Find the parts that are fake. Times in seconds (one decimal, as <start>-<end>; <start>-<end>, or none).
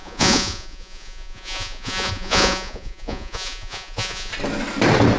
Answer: 0.0-4.3